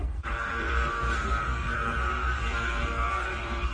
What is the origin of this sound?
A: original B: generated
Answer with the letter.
B